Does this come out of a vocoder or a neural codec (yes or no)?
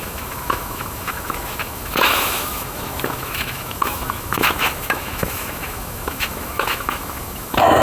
yes